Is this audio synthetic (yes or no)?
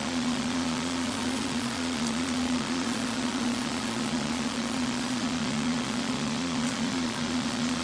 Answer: yes